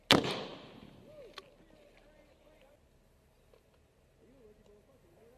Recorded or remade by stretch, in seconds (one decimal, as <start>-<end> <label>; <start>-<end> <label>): 0.0-5.4 recorded